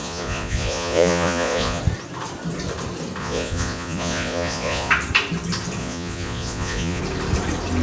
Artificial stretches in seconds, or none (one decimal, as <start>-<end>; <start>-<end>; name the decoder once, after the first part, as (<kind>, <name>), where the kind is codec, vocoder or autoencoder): 0.0-1.8 (vocoder, Vocos); 3.2-4.9; 5.8-7.0